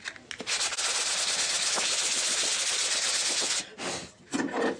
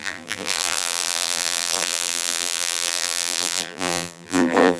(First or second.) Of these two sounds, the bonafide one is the first